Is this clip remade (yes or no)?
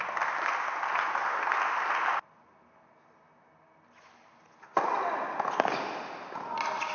no